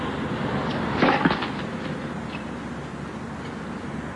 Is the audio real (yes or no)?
yes